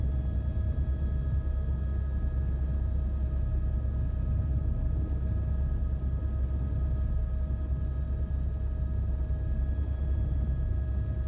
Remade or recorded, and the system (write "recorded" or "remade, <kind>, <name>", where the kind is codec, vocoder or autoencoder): recorded